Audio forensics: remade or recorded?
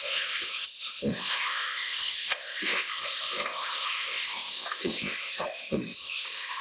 remade